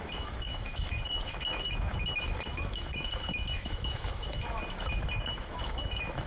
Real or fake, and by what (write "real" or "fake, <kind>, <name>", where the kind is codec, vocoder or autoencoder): fake, autoencoder, DAC-VAE